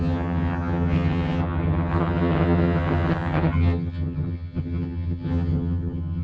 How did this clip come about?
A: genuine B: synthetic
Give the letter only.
B